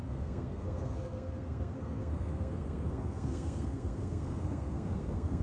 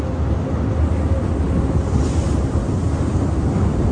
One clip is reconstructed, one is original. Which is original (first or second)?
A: second